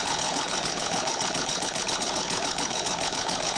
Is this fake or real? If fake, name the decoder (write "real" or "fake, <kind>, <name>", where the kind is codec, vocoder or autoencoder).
fake, codec, HILCodec